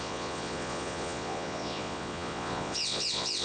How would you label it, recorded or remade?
remade